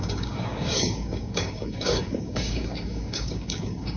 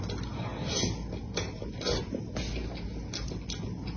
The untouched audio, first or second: second